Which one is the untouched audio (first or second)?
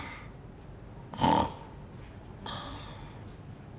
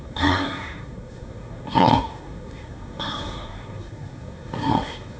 first